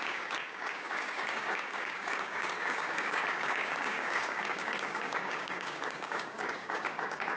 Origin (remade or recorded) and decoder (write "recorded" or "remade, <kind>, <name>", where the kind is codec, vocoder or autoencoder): remade, codec, DAC